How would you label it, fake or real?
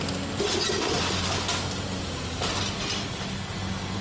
real